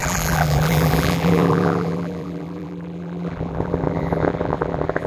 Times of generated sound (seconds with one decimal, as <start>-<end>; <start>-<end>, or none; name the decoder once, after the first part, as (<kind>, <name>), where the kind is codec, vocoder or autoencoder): 0.0-5.1 (vocoder, BigVGAN v2)